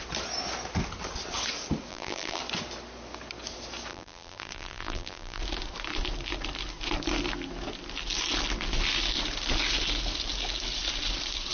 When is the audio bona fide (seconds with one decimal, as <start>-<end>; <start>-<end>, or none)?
0.0-1.9; 2.4-3.9; 5.4-11.5